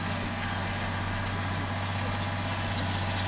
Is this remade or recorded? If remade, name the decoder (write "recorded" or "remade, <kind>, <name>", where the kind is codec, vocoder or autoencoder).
recorded